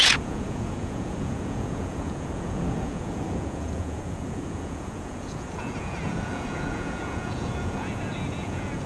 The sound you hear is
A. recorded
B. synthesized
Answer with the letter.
B